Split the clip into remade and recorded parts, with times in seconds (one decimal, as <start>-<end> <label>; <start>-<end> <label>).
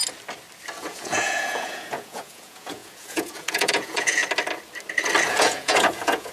0.0-0.8 recorded; 0.8-4.2 remade; 4.2-5.3 recorded; 5.3-6.3 remade